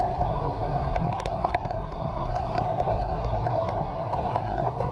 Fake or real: fake